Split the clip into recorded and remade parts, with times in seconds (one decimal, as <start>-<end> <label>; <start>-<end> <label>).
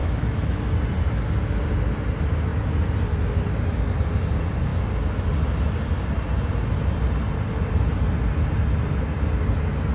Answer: 0.0-0.6 remade; 0.6-9.9 recorded